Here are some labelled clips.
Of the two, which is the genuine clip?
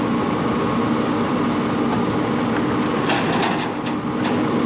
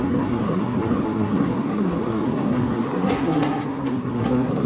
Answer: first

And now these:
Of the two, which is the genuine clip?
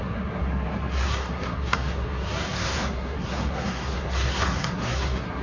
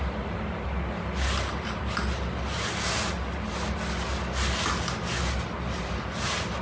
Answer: second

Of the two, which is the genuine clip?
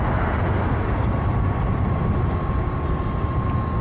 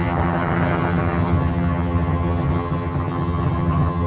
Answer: first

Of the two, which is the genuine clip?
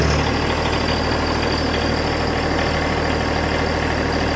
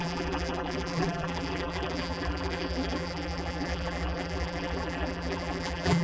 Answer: first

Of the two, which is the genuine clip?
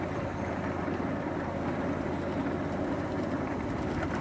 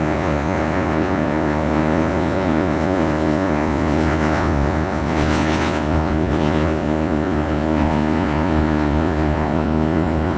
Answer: first